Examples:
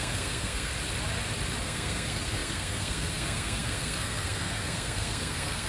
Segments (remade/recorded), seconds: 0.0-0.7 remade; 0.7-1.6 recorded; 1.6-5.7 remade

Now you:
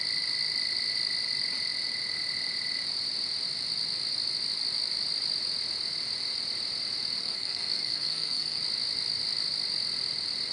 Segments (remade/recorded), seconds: 0.0-7.2 recorded; 7.2-8.6 remade; 8.6-10.5 recorded

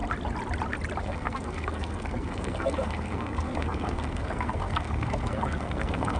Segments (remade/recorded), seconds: 0.0-1.0 recorded; 1.0-6.2 remade

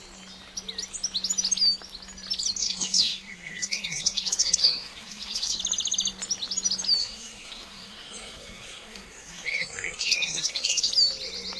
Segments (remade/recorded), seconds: 0.0-2.6 recorded; 2.6-5.6 remade; 5.6-7.0 recorded; 7.0-10.9 remade; 10.9-11.6 recorded

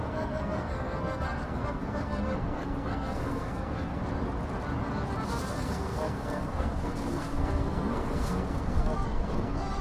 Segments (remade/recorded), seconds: 0.0-4.0 remade; 4.0-5.6 recorded; 5.6-9.8 remade

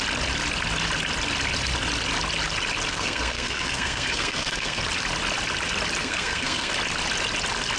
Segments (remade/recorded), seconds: 0.0-2.9 recorded; 2.9-4.8 remade; 4.8-6.0 recorded; 6.0-6.7 remade; 6.7-7.8 recorded